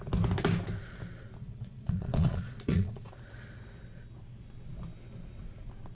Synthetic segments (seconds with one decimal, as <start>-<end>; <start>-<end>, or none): 1.4-3.1